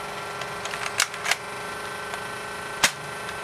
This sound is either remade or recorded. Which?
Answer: recorded